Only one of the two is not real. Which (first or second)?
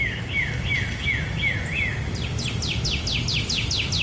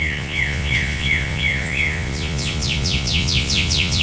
second